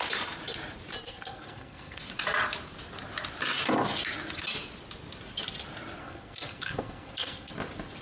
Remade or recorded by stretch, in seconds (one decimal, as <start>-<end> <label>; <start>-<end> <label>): 0.0-1.0 recorded; 1.0-2.0 remade; 2.0-6.0 recorded; 6.0-7.5 remade; 7.5-8.0 recorded